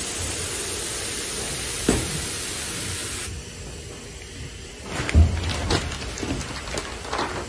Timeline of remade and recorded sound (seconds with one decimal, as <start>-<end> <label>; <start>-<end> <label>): 0.0-7.5 recorded